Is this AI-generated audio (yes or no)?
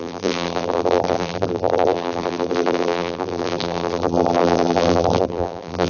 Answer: yes